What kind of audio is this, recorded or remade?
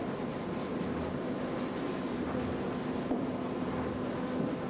recorded